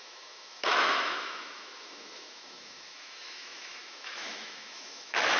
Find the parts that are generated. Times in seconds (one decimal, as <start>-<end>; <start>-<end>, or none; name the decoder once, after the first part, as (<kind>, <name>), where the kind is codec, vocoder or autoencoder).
0.0-5.4 (autoencoder, DAC-VAE)